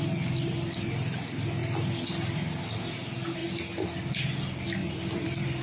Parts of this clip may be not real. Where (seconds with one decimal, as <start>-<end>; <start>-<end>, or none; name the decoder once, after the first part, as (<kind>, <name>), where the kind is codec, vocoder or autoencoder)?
4.8-5.6 (vocoder, BigVGAN v2)